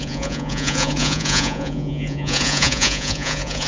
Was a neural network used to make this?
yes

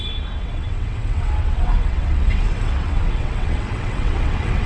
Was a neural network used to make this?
yes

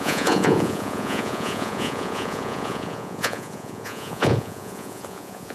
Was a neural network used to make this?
yes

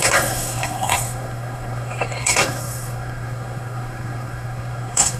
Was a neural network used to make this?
yes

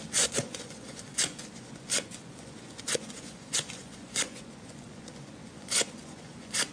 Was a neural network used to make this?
yes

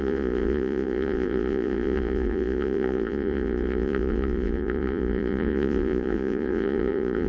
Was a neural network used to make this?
yes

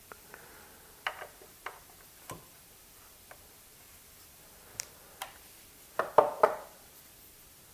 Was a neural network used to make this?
yes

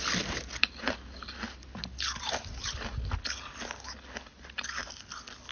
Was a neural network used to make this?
no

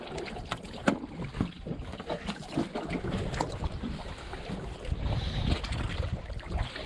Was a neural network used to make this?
no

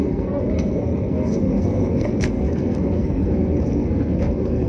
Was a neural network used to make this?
yes